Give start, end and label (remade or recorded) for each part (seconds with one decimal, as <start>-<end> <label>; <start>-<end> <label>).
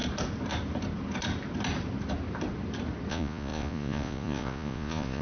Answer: 0.0-3.1 recorded; 3.1-5.2 remade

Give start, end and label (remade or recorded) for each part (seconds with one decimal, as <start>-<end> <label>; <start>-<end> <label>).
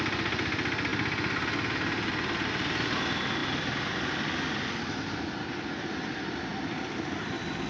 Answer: 0.0-3.4 recorded; 3.4-4.1 remade; 4.1-7.7 recorded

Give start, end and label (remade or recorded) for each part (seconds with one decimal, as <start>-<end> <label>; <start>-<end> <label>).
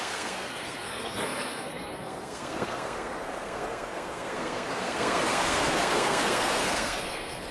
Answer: 0.0-7.5 remade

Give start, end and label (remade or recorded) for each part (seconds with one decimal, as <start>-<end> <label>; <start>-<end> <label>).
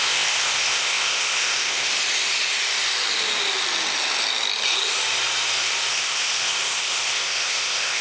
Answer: 0.0-1.9 remade; 1.9-5.9 recorded; 5.9-8.0 remade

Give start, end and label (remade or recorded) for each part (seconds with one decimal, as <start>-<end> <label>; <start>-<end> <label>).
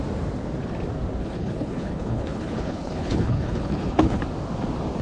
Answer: 0.0-1.2 recorded; 1.2-4.2 remade; 4.2-5.0 recorded